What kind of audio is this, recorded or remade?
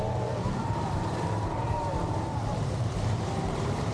remade